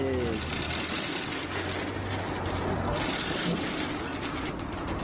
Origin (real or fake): real